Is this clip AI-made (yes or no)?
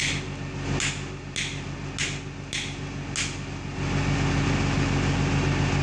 no